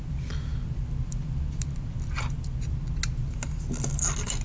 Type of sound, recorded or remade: recorded